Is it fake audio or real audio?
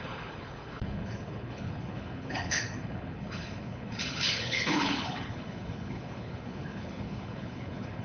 fake